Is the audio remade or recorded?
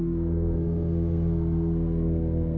remade